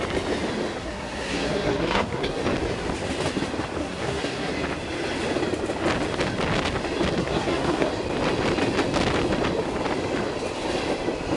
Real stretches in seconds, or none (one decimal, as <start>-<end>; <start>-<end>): 0.0-0.8; 2.4-3.8; 4.5-7.2; 7.9-11.4